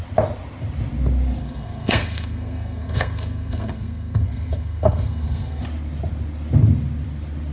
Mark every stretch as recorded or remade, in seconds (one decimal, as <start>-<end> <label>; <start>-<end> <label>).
0.0-1.4 recorded; 1.4-5.6 remade; 5.6-7.5 recorded